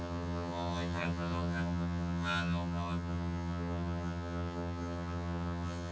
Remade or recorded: remade